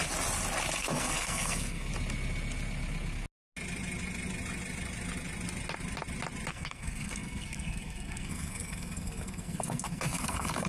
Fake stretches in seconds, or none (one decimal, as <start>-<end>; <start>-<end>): 0.8-1.9; 6.5-10.7